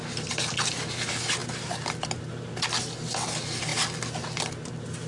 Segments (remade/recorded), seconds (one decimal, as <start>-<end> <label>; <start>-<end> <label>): 0.0-5.1 recorded